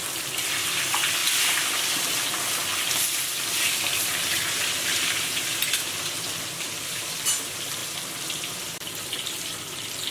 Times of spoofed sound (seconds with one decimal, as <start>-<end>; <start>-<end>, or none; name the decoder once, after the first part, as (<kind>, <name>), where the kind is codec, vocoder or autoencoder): 0.0-2.7 (vocoder, BigVGAN v2); 6.4-10.1